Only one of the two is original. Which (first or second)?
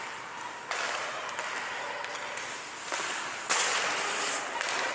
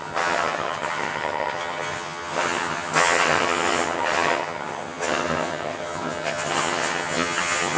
first